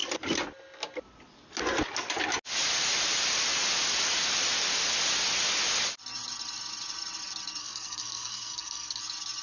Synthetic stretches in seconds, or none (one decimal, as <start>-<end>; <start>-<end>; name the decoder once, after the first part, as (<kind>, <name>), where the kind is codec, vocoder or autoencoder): 7.6-9.0 (codec, SNAC)

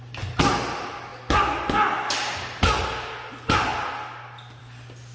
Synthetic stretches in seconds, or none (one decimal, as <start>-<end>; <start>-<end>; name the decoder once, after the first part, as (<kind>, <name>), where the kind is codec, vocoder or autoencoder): none